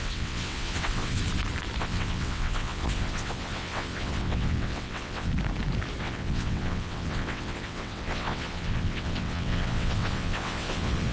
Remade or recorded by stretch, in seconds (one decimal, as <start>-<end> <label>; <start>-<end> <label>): 0.0-1.2 remade; 1.2-1.8 recorded; 1.8-5.3 remade; 5.3-6.0 recorded; 6.0-11.1 remade

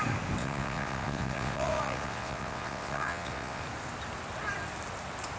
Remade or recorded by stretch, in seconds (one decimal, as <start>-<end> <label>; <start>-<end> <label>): 0.0-0.4 recorded; 0.4-3.6 remade; 3.6-5.4 recorded

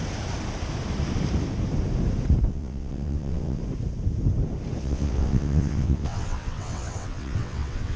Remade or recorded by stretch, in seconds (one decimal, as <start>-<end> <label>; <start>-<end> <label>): 0.0-2.5 recorded; 2.5-3.6 remade; 3.6-4.8 recorded; 4.8-8.0 remade